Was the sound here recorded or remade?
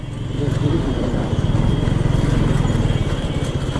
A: recorded